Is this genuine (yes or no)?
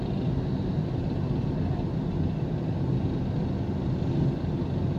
yes